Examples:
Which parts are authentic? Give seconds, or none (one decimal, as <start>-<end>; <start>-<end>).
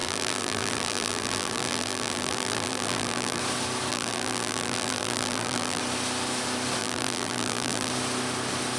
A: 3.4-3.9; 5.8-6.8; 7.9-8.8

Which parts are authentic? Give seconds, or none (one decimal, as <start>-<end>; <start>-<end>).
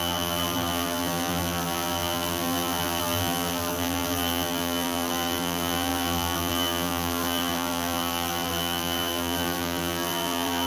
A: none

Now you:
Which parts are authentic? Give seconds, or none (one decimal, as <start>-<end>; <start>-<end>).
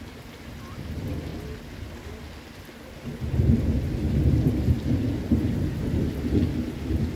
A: 0.0-7.2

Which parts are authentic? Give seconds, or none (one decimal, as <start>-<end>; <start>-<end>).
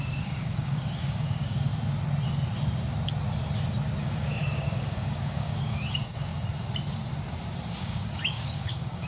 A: 1.7-4.0; 6.3-7.8